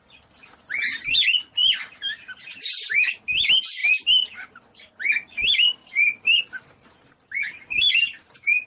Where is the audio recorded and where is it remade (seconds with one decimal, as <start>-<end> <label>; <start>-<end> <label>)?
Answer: 0.0-8.7 recorded